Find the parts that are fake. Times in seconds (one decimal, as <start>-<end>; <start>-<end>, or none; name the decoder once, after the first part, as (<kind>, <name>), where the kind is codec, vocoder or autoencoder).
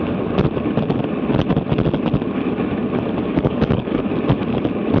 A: 3.2-4.1 (codec, DAC)